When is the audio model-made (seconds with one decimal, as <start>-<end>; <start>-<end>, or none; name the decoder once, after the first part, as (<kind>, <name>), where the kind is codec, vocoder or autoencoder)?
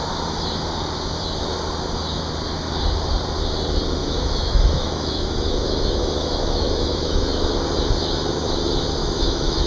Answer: 4.0-7.5 (autoencoder, DAC-VAE); 9.0-9.7